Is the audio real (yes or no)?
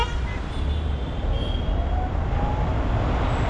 yes